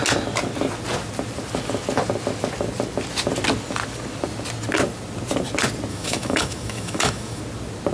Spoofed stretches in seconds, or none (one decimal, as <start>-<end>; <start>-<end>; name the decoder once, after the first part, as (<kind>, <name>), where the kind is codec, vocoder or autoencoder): 5.9-7.4 (autoencoder, DAC-VAE)